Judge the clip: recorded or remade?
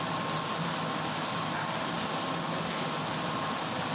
recorded